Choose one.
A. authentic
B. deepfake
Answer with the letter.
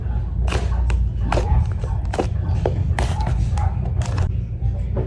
A